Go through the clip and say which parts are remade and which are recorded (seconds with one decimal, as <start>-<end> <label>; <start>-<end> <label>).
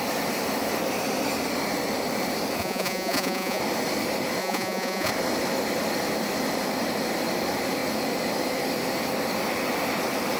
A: 0.0-2.6 recorded; 2.6-3.6 remade; 3.6-4.4 recorded; 4.4-5.1 remade; 5.1-10.4 recorded